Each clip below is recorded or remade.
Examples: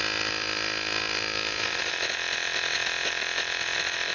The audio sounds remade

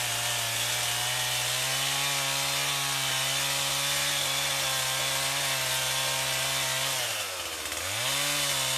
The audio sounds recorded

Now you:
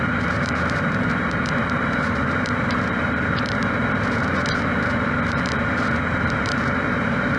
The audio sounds remade